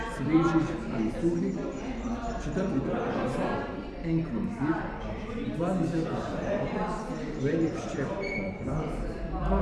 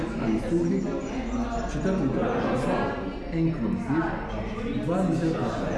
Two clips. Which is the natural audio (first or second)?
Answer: second